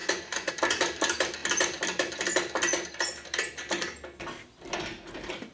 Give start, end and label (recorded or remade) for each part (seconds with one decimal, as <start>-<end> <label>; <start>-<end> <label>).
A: 0.0-0.5 remade; 0.5-5.5 recorded